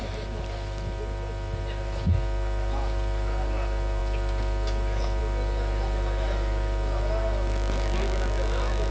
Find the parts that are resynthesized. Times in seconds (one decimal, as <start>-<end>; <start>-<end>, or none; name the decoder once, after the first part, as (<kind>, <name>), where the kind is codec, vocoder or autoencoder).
none